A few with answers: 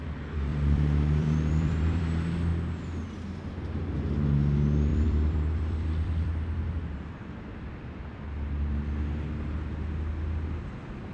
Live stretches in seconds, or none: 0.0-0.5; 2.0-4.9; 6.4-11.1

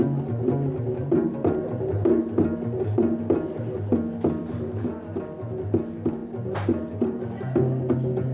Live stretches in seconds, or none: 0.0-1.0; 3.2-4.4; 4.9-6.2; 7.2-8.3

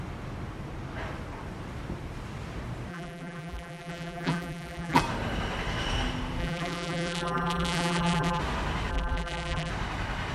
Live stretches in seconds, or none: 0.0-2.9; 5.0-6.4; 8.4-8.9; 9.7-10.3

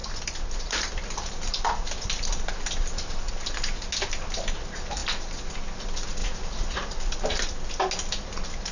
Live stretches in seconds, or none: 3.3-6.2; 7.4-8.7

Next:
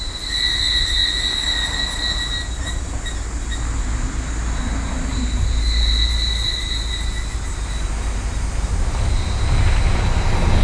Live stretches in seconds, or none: 0.0-10.6